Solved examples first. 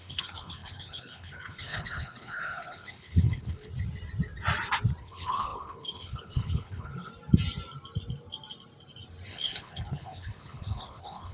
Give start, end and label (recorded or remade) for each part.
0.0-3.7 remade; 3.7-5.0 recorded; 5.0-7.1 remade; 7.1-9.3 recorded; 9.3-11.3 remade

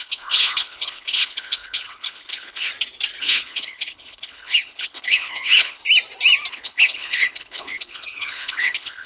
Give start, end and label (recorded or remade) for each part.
0.0-2.7 remade; 2.7-3.2 recorded; 3.2-5.8 remade; 5.8-6.5 recorded; 6.5-9.1 remade

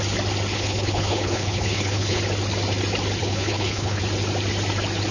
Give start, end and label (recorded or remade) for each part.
0.0-0.5 recorded; 0.5-2.2 remade; 2.2-3.2 recorded; 3.2-4.0 remade; 4.0-5.1 recorded

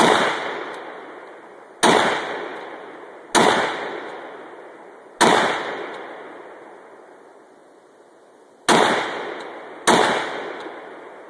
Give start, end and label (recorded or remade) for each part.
0.0-11.3 recorded

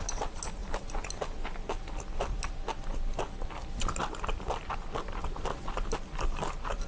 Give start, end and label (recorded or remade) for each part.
0.0-6.9 recorded

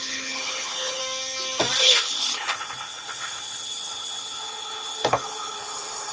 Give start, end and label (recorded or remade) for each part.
0.0-1.0 remade; 1.0-1.8 recorded; 1.8-6.1 remade

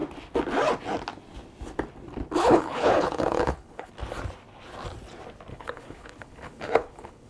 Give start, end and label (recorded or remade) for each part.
0.0-2.4 recorded; 2.4-3.9 remade; 3.9-5.5 recorded; 5.5-7.3 remade